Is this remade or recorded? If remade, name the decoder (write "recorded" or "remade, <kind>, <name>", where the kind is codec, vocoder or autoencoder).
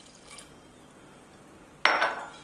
recorded